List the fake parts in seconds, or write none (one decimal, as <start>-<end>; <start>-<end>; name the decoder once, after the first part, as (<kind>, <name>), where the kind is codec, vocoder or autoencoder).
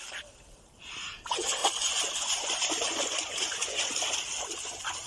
1.6-3.9 (vocoder, Vocos)